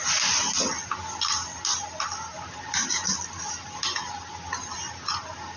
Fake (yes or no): no